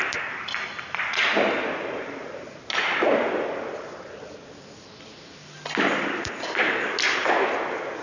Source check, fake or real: real